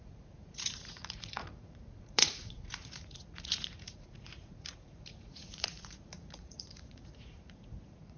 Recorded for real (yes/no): no